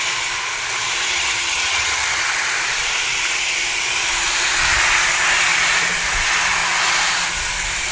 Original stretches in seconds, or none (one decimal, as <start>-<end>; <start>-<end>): 0.0-1.1; 2.2-7.9